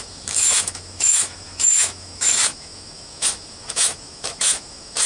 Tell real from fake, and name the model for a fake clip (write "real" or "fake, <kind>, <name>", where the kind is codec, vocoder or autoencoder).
fake, autoencoder, DAC-VAE